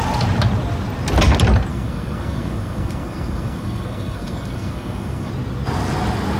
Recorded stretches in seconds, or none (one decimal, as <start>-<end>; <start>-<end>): 0.0-1.7; 5.3-6.4